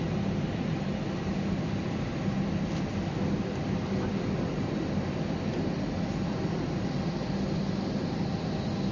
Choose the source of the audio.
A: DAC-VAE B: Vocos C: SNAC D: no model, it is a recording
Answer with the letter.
D